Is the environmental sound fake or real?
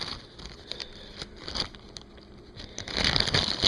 real